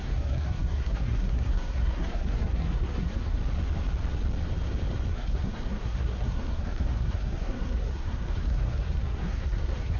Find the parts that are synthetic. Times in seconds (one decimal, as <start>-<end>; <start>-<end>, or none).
0.0-3.4; 5.1-10.0